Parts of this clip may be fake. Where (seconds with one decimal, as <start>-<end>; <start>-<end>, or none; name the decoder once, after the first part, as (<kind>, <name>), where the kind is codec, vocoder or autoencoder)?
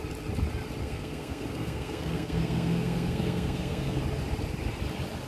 0.8-4.0 (codec, SNAC)